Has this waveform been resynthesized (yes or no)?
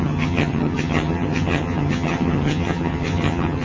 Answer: yes